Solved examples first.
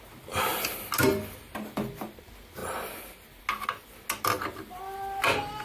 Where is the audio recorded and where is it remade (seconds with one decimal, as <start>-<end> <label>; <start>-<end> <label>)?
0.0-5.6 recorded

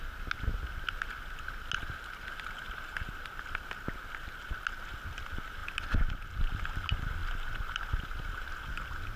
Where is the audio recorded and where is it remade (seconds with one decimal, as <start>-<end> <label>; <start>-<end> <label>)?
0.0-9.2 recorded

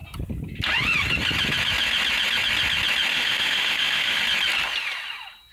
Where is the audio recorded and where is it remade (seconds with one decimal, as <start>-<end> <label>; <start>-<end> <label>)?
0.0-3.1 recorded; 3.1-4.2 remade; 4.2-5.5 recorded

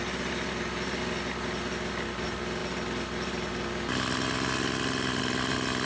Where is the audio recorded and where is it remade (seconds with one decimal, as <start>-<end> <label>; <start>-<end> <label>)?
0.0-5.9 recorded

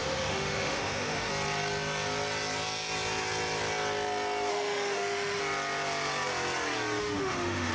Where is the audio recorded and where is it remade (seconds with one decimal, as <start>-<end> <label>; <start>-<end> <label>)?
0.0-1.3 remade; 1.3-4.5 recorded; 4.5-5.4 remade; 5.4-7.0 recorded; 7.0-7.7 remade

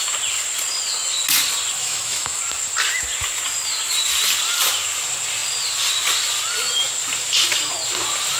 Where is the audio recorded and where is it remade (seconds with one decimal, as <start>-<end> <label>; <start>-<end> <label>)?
0.0-1.8 recorded; 1.8-2.4 remade; 2.4-8.4 recorded